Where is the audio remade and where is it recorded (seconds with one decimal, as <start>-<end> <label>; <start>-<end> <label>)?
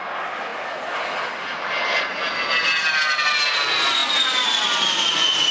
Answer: 0.0-5.5 recorded